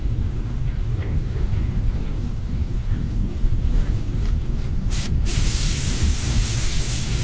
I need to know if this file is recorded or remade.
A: remade